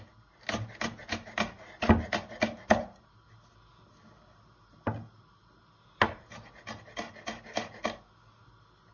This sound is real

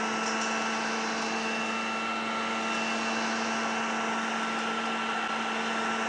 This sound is real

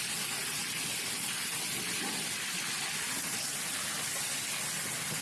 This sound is real